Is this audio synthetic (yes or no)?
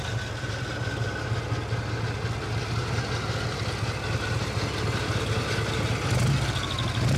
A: no